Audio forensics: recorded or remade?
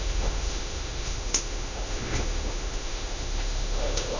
remade